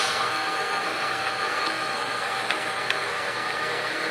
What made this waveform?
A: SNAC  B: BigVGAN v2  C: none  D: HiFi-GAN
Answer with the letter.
A